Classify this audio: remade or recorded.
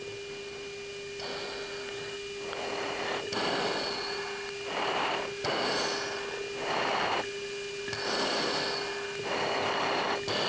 recorded